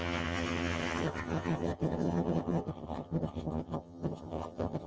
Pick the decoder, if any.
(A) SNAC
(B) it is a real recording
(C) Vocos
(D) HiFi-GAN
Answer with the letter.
D